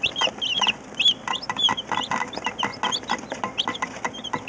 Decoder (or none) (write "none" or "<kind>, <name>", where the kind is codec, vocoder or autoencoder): none